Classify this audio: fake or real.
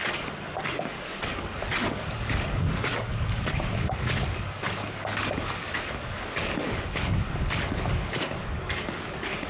fake